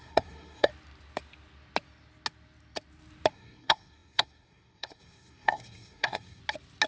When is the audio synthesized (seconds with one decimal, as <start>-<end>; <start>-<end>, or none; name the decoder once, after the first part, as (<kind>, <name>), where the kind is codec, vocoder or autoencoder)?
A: 0.0-0.7 (codec, SNAC); 3.3-6.4